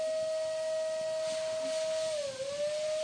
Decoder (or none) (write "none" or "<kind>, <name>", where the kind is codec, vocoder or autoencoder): none